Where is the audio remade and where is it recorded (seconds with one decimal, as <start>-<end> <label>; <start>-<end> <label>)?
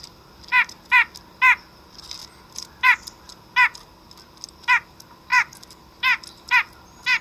0.0-2.2 recorded; 2.2-3.3 remade; 3.3-5.3 recorded; 5.3-6.0 remade; 6.0-7.2 recorded